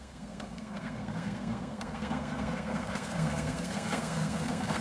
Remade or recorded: remade